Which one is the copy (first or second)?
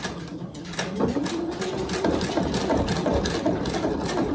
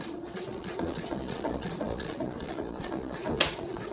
second